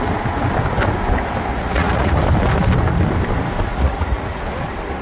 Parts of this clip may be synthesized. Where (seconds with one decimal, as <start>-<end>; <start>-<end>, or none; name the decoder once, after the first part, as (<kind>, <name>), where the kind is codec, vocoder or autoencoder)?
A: 1.5-2.2 (vocoder, Vocos); 3.7-4.4